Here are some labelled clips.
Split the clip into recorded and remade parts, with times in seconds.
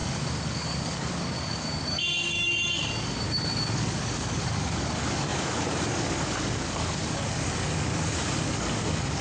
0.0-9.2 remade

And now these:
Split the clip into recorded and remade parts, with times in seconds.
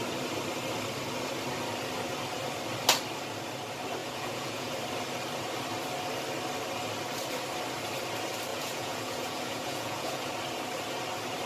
0.0-4.0 recorded; 4.0-4.7 remade; 4.7-8.5 recorded; 8.5-10.3 remade; 10.3-11.5 recorded